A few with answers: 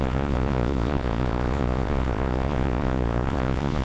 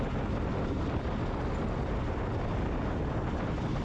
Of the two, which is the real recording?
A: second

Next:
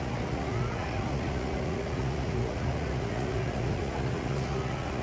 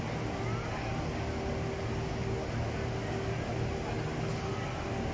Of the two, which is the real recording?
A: second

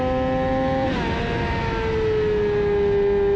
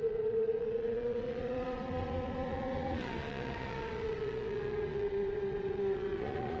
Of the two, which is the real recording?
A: first